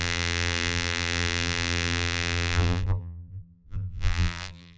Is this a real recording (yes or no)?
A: no